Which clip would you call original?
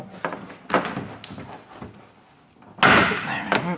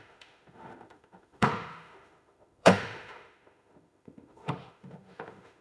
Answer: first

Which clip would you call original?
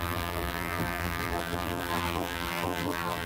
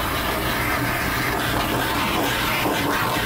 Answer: second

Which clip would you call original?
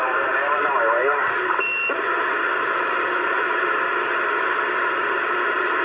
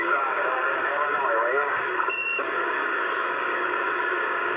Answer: first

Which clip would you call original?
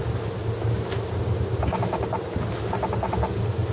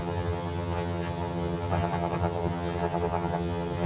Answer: first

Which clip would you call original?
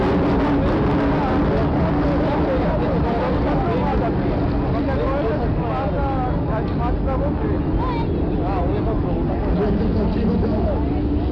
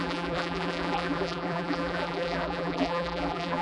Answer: first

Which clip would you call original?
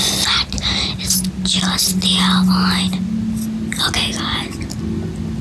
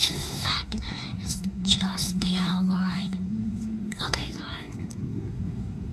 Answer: first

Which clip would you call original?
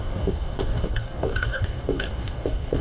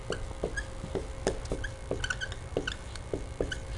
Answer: second